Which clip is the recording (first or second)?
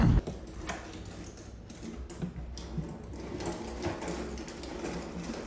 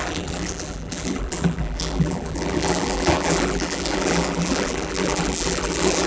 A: first